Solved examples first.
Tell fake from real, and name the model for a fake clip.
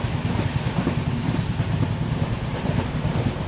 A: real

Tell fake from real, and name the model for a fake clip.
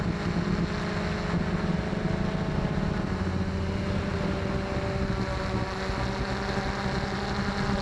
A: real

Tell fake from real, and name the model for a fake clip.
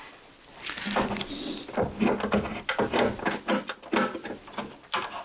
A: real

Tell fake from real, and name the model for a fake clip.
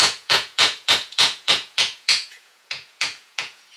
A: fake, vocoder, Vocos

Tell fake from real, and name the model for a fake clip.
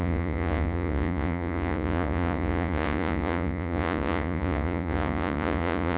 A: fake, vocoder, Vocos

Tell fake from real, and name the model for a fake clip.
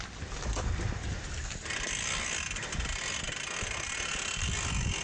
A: real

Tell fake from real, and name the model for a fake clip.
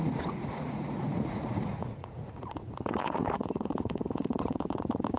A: fake, vocoder, Vocos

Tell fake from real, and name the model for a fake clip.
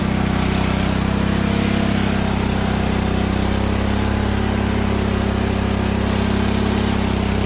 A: real